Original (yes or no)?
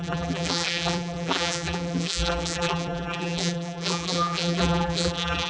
no